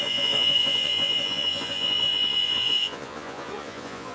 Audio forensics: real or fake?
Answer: fake